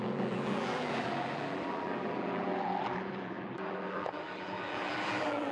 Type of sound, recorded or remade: remade